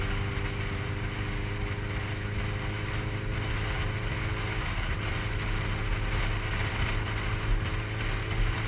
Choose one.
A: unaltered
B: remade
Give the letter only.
A